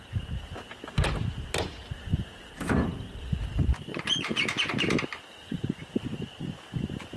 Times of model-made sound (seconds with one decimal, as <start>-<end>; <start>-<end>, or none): 3.9-4.4